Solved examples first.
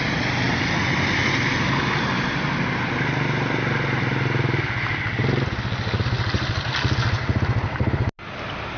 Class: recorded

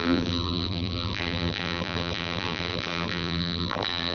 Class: remade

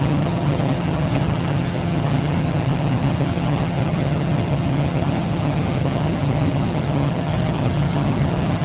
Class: remade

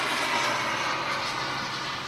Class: remade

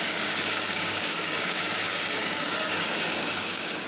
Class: remade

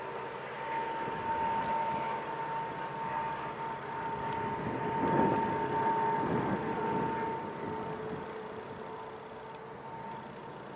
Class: recorded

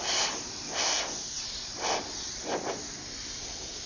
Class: remade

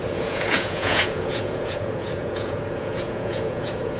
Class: remade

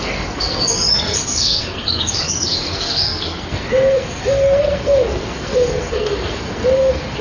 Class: remade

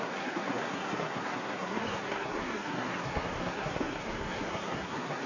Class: remade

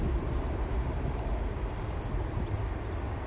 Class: recorded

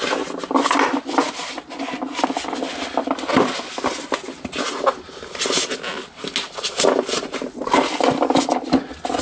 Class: recorded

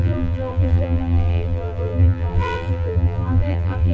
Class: remade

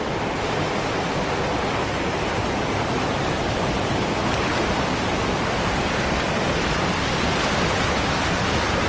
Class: recorded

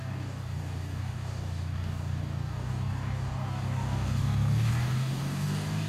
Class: remade